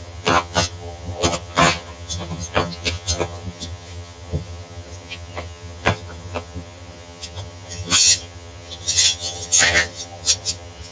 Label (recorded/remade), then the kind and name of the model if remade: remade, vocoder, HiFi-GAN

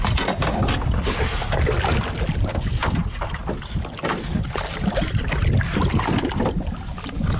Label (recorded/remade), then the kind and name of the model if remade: recorded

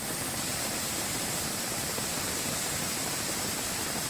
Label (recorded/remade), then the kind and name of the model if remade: remade, vocoder, BigVGAN v2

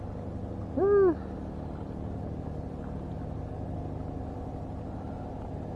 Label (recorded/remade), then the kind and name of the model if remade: recorded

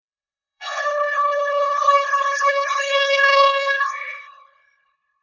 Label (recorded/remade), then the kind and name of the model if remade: remade, codec, HILCodec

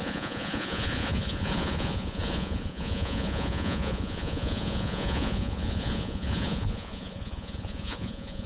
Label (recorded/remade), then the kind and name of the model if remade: remade, vocoder, Vocos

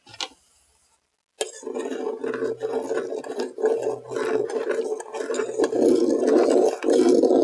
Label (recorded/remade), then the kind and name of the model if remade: recorded